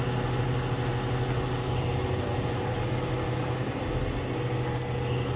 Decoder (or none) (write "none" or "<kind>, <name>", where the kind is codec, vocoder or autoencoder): none